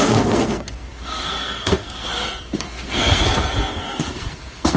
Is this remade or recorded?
remade